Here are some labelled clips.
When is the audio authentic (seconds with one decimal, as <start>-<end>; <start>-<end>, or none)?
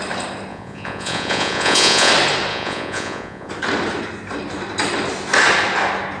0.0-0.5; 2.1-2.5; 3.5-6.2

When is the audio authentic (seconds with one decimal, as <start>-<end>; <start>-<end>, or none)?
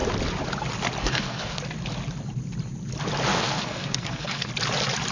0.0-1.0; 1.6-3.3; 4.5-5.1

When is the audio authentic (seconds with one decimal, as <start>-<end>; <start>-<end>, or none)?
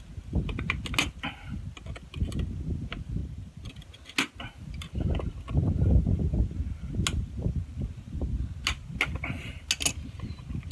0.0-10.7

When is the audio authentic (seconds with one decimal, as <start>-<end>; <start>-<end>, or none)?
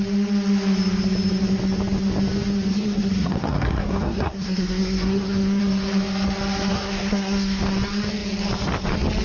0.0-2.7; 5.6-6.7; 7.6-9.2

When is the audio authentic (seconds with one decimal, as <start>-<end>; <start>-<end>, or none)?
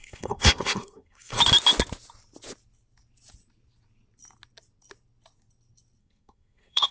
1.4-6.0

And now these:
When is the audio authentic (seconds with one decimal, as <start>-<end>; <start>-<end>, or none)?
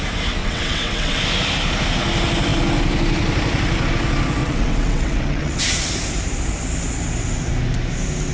0.0-0.4; 1.2-4.4; 5.6-8.3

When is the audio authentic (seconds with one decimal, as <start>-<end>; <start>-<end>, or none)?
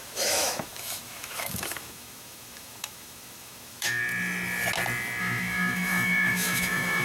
4.0-5.2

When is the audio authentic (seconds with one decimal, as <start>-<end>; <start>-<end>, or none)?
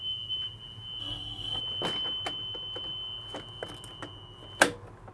0.0-1.0; 1.6-5.1